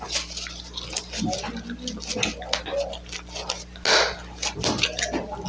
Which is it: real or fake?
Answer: real